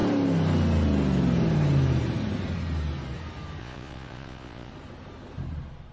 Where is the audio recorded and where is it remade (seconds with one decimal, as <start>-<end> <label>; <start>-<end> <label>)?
0.0-3.6 recorded; 3.6-4.7 remade; 4.7-5.9 recorded